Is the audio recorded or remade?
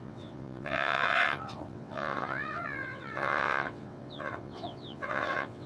remade